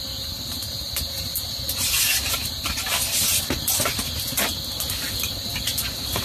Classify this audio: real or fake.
real